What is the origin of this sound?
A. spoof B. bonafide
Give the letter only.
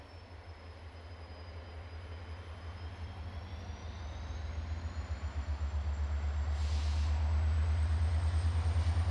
B